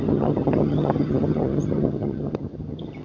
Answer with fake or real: fake